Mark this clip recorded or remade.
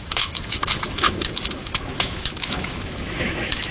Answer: remade